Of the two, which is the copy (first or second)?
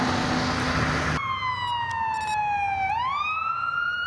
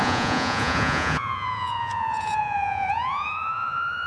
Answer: second